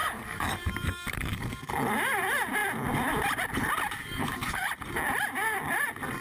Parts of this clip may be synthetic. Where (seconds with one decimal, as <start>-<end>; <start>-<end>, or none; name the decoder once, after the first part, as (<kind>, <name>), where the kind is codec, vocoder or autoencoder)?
0.0-1.7 (codec, DAC); 4.0-4.7